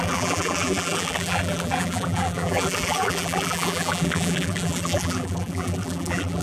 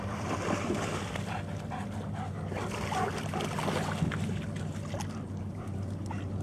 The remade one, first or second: first